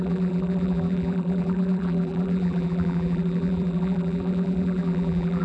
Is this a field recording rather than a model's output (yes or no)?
no